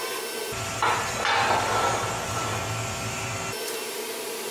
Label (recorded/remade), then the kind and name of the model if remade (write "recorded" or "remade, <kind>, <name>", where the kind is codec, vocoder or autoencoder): recorded